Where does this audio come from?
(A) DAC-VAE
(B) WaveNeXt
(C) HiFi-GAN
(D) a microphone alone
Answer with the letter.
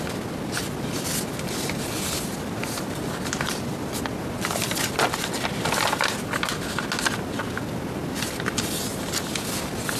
D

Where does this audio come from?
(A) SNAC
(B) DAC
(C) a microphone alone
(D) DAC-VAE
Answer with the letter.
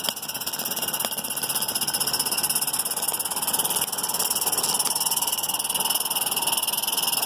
C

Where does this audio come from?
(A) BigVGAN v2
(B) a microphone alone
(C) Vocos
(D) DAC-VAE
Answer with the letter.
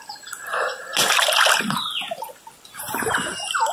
B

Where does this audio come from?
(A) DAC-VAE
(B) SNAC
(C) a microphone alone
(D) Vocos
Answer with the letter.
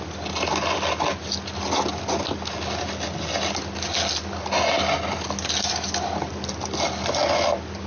C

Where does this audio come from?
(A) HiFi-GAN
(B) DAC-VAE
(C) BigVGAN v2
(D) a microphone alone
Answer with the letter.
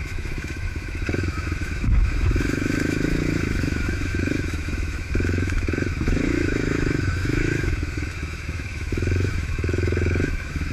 B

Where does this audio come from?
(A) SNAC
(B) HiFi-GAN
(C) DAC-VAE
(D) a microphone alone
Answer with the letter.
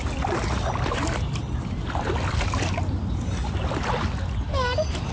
D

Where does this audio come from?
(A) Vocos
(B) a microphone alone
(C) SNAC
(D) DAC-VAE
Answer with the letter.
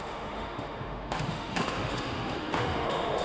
D